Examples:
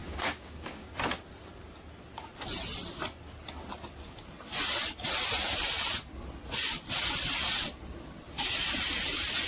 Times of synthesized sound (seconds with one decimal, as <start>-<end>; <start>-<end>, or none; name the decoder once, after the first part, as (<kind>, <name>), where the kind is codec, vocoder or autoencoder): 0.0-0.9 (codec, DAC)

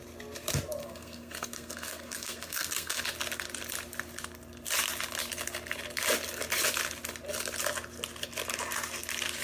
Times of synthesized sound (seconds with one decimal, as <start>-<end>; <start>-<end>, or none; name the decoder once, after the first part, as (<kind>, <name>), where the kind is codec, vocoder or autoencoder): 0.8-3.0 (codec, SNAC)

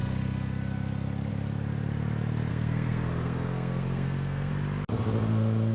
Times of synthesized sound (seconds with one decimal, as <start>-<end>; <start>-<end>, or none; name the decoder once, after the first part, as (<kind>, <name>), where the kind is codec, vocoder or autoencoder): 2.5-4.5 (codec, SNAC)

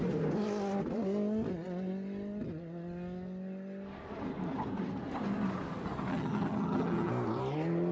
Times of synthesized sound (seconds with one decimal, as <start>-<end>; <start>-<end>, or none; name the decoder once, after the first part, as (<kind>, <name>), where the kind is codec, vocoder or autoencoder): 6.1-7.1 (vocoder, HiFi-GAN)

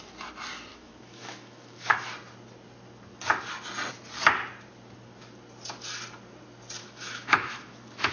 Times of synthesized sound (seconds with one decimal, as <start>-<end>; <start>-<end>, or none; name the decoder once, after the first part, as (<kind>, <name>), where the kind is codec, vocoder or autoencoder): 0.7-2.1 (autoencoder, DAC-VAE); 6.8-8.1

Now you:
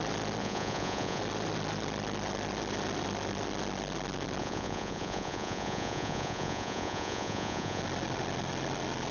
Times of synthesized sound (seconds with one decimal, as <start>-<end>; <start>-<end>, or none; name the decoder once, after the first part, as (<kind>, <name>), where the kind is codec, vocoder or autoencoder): 0.4-1.2 (vocoder, Vocos); 4.4-7.8

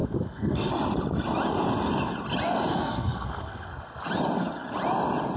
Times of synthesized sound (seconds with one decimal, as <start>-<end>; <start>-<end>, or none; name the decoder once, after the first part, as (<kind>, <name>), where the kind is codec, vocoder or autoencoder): 0.0-0.7 (codec, SNAC); 2.7-4.0